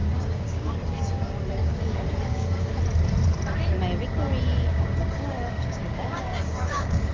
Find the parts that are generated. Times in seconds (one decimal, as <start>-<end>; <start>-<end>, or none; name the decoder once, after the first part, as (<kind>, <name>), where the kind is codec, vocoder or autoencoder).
0.0-0.7 (codec, DAC); 1.6-2.8; 4.7-7.1